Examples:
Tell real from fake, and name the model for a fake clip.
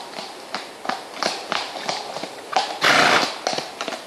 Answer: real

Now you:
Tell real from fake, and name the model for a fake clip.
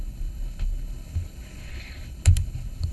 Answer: fake, codec, HILCodec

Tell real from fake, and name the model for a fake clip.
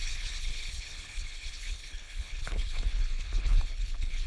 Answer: fake, codec, HILCodec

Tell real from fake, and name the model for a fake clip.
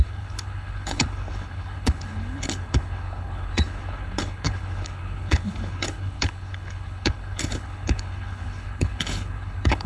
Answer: fake, codec, HILCodec